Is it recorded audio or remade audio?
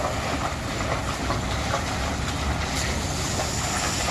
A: recorded